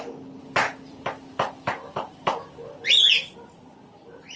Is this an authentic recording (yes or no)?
yes